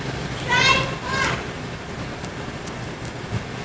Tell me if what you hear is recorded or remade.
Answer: recorded